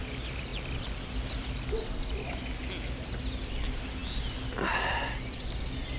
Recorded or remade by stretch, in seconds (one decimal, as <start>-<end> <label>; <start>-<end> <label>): 0.0-0.5 recorded; 0.5-1.7 remade; 1.7-6.0 recorded